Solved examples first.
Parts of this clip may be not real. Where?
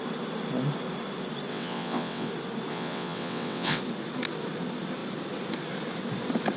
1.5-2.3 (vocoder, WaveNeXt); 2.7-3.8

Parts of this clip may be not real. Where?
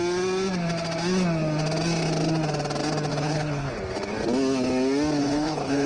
3.1-3.7 (codec, HILCodec); 5.2-5.9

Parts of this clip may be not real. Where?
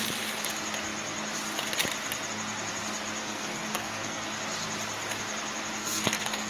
3.2-4.3 (codec, SNAC); 5.8-6.5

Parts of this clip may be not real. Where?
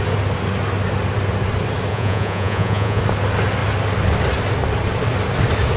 1.9-3.0 (vocoder, Vocos)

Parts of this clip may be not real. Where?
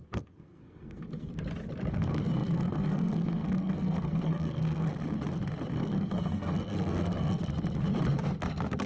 0.0-1.3 (codec, SNAC); 1.9-4.9; 5.8-7.4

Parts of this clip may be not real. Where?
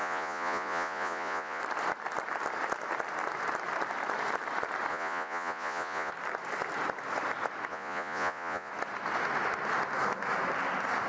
0.0-1.6 (vocoder, Vocos); 4.9-6.1; 7.7-8.7